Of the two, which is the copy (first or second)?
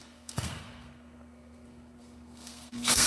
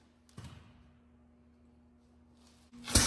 first